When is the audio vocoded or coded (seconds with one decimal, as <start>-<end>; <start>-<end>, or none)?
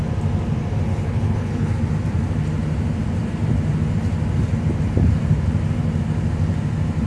0.9-1.8